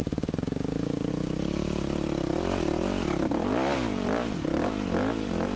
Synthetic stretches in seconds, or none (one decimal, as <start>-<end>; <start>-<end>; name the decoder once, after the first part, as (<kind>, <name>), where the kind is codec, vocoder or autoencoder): 0.0-1.1 (codec, DAC)